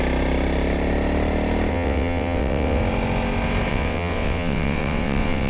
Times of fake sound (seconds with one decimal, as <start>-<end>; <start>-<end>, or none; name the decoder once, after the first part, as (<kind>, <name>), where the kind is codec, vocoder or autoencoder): 1.7-2.8 (vocoder, WaveNeXt); 3.7-5.5